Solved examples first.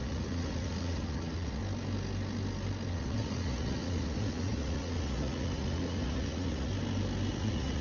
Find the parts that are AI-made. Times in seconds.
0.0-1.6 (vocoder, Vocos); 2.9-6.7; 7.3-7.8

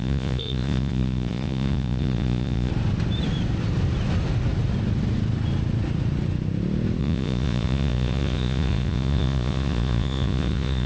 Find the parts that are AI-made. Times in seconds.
0.0-2.7 (vocoder, Vocos); 7.0-10.9

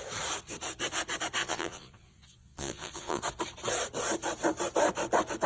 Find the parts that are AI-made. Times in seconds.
1.4-3.2 (vocoder, Vocos)